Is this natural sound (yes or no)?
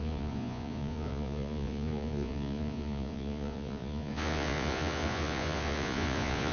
no